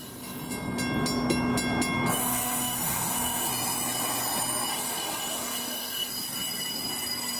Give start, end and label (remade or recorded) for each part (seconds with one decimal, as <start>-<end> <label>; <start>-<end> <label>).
0.0-2.2 recorded; 2.2-3.5 remade; 3.5-4.7 recorded; 4.7-6.1 remade; 6.1-7.4 recorded